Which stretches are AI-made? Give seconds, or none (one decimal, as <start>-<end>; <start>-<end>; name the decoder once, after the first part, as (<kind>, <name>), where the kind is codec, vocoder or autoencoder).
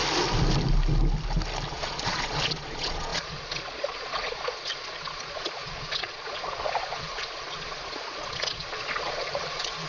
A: 1.7-9.9 (vocoder, Vocos)